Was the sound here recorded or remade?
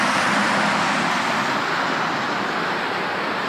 recorded